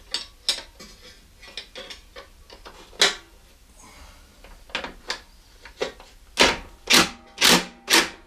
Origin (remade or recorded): recorded